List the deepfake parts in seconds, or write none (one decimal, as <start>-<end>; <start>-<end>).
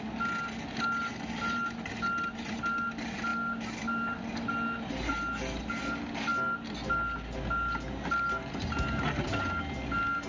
none